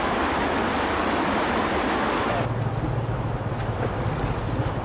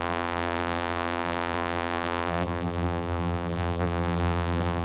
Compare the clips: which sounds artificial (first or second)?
second